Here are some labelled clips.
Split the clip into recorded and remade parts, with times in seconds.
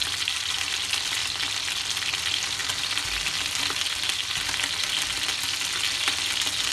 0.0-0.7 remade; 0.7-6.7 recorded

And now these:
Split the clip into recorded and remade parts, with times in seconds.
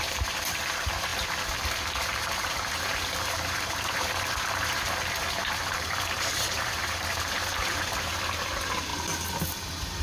0.0-8.9 remade; 8.9-10.0 recorded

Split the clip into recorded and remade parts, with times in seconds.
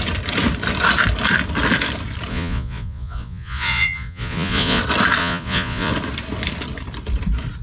0.0-2.3 recorded; 2.3-4.8 remade; 4.8-5.2 recorded; 5.2-5.9 remade; 5.9-7.6 recorded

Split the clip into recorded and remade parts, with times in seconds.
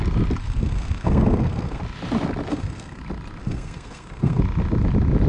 0.0-0.4 recorded; 0.4-1.8 remade; 1.8-2.5 recorded; 2.5-3.0 remade; 3.0-3.4 recorded; 3.4-4.4 remade; 4.4-5.3 recorded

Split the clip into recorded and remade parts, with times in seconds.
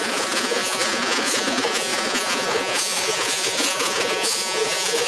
0.0-5.1 remade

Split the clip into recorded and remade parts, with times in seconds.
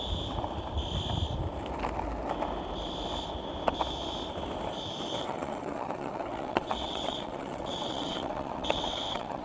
0.0-5.2 recorded; 5.2-9.4 remade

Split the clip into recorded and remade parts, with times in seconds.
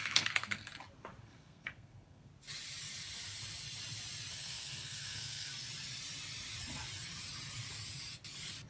0.0-0.7 remade; 0.7-1.2 recorded; 1.2-2.3 remade; 2.3-4.3 recorded; 4.3-5.5 remade; 5.5-8.7 recorded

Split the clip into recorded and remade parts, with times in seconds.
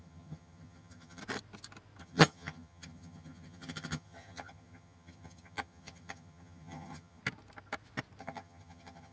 0.0-1.2 remade; 1.2-2.0 recorded; 2.0-7.2 remade; 7.2-8.2 recorded; 8.2-9.1 remade